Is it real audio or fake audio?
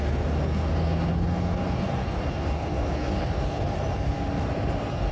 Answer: real